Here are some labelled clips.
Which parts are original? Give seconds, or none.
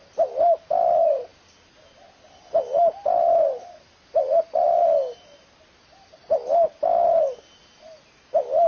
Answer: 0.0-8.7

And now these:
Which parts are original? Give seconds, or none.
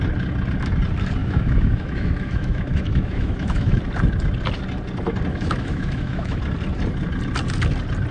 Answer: 0.0-1.2; 3.8-5.3; 6.4-8.1